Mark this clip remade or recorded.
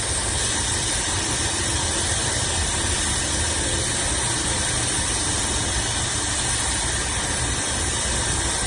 recorded